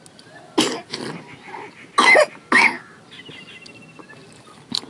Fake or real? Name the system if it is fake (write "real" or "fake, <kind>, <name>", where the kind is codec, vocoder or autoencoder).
real